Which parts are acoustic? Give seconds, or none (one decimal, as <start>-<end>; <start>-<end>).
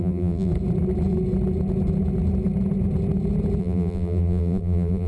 0.5-3.6